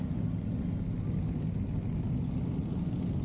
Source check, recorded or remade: recorded